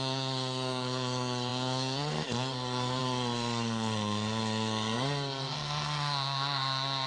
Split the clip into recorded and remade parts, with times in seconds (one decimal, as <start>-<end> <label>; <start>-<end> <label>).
0.0-7.1 remade